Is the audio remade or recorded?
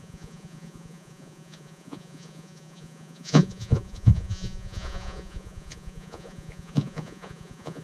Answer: remade